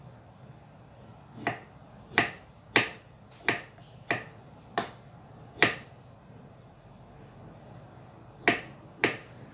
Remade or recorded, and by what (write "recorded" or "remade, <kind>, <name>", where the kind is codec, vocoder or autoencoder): recorded